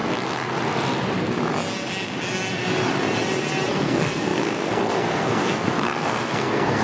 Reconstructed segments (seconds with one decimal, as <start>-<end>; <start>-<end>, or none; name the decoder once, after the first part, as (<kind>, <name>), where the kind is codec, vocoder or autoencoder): 3.7-6.8 (codec, SNAC)